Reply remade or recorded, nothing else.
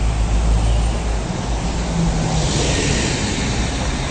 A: recorded